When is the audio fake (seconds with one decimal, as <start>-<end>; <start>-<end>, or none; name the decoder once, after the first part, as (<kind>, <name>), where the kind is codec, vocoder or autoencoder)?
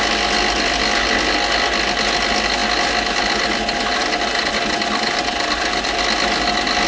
none